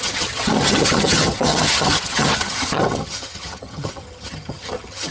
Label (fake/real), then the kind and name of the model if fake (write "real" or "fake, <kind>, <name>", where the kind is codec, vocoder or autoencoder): fake, vocoder, HiFi-GAN